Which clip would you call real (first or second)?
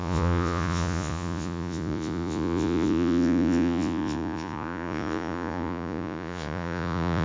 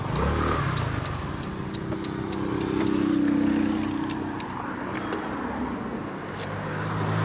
second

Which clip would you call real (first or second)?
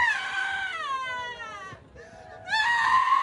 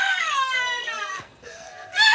first